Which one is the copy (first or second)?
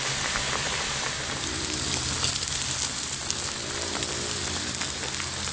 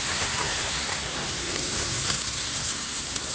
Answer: second